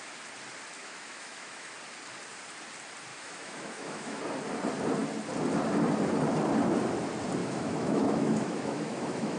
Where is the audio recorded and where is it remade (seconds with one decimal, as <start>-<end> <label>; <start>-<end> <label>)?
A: 0.0-0.8 recorded; 0.8-1.7 remade; 1.7-3.1 recorded; 3.1-4.2 remade; 4.2-7.4 recorded; 7.4-9.4 remade